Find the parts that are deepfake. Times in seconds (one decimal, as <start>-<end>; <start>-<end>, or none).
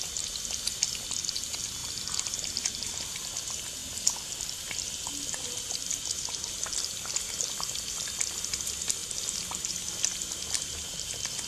none